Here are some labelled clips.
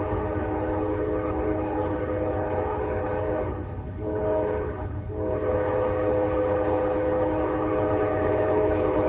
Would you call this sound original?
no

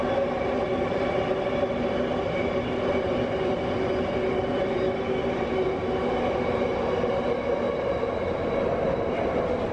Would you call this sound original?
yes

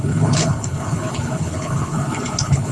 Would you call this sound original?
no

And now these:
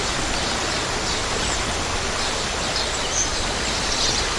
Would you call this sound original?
yes